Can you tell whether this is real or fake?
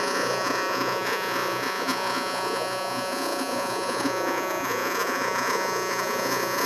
fake